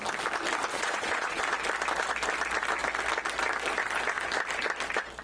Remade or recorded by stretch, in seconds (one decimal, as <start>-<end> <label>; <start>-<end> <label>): 0.0-0.7 recorded; 0.7-1.4 remade; 1.4-5.2 recorded